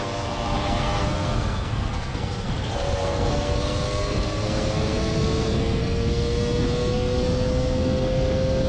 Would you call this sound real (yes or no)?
no